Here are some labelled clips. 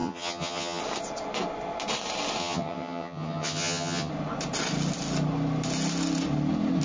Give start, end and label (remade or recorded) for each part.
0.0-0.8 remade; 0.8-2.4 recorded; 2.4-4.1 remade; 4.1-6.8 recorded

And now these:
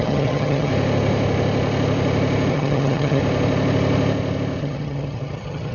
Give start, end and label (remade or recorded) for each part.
0.0-0.7 remade; 0.7-2.5 recorded; 2.5-3.2 remade; 3.2-4.6 recorded; 4.6-5.7 remade

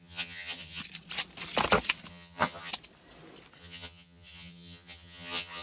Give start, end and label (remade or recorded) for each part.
0.0-0.8 remade; 0.8-2.1 recorded; 2.1-2.7 remade; 2.7-3.6 recorded; 3.6-5.6 remade

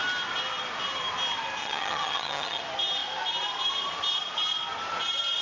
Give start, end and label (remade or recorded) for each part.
0.0-1.6 recorded; 1.6-2.6 remade; 2.6-5.4 recorded

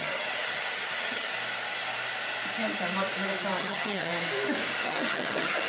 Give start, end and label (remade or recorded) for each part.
0.0-1.3 remade; 1.3-3.6 recorded; 3.6-4.1 remade; 4.1-4.8 recorded; 4.8-5.7 remade

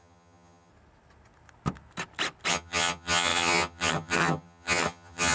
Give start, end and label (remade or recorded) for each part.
0.0-0.7 remade; 0.7-2.5 recorded; 2.5-5.3 remade

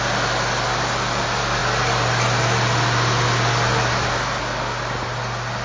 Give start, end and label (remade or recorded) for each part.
0.0-5.6 recorded